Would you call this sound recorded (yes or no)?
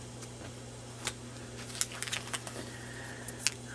yes